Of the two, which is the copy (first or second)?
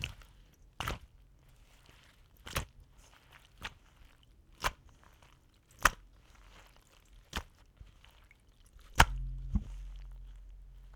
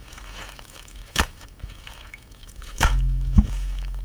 second